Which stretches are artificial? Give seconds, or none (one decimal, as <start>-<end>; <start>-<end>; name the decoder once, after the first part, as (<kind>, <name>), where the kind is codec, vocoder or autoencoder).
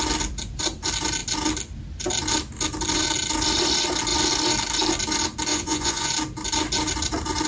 5.5-6.1 (vocoder, Vocos)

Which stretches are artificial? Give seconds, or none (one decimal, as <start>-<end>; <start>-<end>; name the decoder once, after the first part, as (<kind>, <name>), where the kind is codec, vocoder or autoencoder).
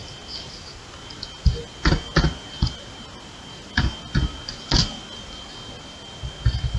none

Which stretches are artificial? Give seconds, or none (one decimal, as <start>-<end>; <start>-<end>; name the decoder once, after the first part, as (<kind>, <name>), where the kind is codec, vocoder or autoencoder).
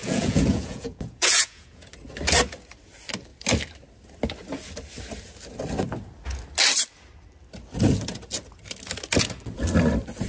0.0-1.9 (vocoder, Vocos)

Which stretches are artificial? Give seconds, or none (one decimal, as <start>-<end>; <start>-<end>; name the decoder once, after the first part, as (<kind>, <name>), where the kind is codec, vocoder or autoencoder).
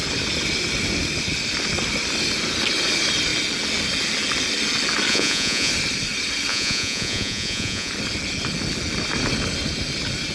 5.1-5.7 (vocoder, Vocos); 6.5-7.9